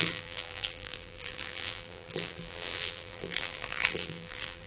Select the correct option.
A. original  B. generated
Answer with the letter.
B